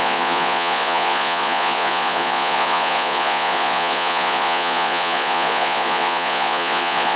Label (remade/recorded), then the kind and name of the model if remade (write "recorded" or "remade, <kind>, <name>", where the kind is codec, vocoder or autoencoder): remade, vocoder, Vocos